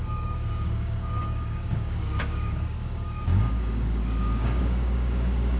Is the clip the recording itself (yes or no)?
no